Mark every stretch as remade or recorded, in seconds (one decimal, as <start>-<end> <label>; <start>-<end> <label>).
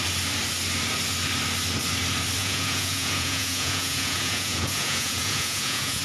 0.0-2.4 recorded; 2.4-6.0 remade